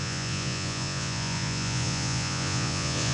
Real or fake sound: fake